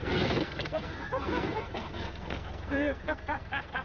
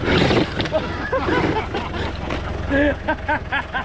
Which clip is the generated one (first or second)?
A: first